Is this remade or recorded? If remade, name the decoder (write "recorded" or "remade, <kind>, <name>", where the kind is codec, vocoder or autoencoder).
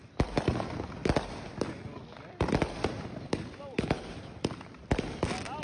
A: remade, vocoder, BigVGAN v2